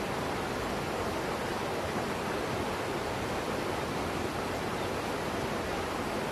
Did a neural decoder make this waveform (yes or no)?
yes